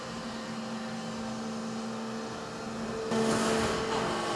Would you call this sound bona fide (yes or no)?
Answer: yes